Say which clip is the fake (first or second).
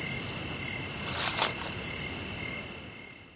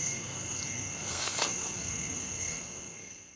second